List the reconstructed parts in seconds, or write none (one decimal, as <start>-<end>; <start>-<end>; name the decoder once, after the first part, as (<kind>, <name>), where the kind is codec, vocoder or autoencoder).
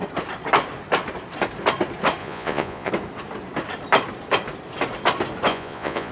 2.2-2.9 (vocoder, Vocos); 5.5-6.1